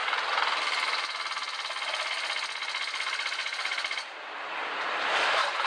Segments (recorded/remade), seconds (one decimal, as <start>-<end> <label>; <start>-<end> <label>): 0.0-3.4 recorded; 3.4-5.7 remade